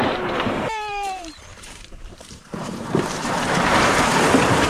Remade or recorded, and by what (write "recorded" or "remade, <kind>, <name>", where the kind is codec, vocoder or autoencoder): remade, vocoder, BigVGAN v2